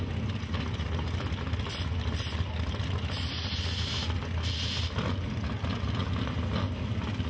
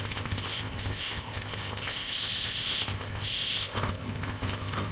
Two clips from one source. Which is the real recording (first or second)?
first